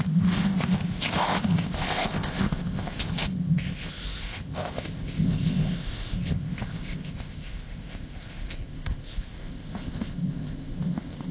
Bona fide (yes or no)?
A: no